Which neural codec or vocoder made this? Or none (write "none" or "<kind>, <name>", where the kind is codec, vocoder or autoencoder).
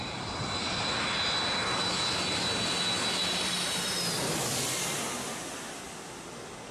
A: none